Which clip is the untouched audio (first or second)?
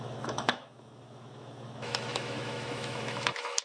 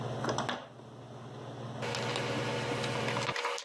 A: second